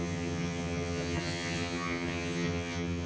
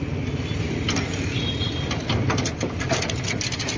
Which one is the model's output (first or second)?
first